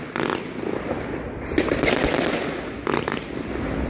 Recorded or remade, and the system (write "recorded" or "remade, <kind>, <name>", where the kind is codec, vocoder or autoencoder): recorded